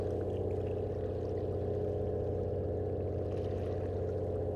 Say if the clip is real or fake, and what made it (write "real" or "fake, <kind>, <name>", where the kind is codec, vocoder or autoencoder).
real